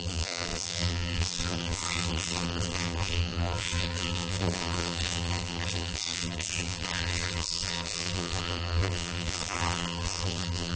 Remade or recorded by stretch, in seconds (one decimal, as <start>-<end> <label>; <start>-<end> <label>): 0.0-10.8 remade